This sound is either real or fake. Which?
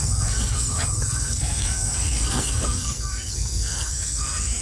fake